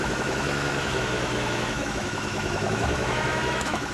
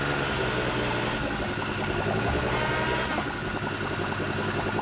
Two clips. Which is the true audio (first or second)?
second